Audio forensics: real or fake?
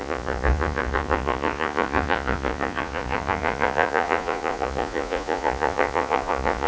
fake